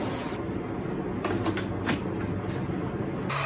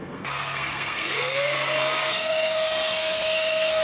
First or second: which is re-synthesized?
second